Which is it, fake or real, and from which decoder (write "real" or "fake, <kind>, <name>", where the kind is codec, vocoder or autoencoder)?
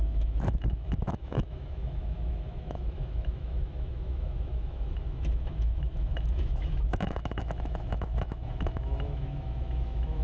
fake, autoencoder, DAC-VAE